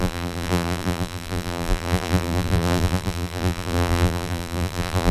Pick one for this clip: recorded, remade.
remade